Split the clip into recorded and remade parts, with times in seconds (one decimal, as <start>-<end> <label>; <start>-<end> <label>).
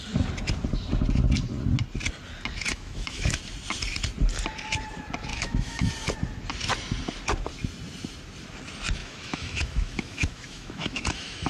0.0-2.7 recorded; 2.7-3.4 remade; 3.4-5.3 recorded; 5.3-5.9 remade; 5.9-9.0 recorded; 9.0-11.5 remade